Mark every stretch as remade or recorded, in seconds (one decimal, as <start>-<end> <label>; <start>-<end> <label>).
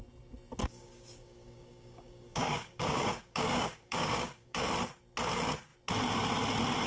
0.0-0.6 recorded; 0.6-4.7 remade; 4.7-6.9 recorded